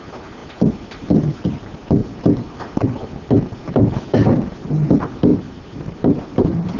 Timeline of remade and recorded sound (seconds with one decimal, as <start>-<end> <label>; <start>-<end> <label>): 0.0-2.0 recorded; 2.0-2.6 remade; 2.6-5.3 recorded; 5.3-6.8 remade